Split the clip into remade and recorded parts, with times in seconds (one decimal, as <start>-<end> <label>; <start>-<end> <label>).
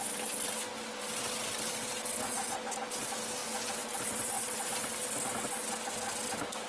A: 0.0-6.7 recorded